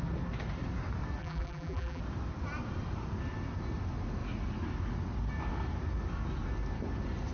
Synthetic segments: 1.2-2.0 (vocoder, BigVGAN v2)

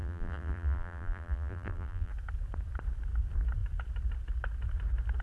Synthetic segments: 0.0-2.1 (vocoder, BigVGAN v2)